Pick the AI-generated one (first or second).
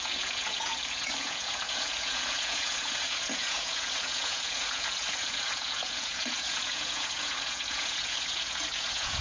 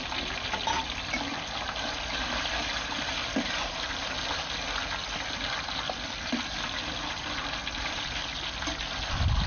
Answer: first